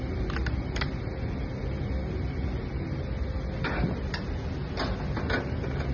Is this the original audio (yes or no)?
yes